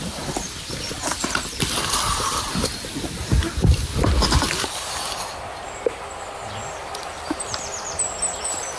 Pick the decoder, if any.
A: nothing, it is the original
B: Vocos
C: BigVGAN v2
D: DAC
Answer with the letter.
C